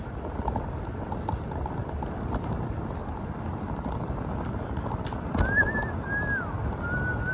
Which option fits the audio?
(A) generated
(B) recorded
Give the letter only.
B